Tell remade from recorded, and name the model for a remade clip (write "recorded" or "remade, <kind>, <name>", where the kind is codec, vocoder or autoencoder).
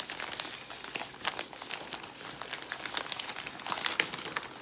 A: recorded